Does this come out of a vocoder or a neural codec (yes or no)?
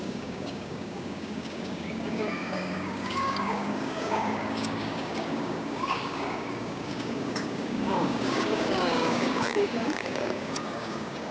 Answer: yes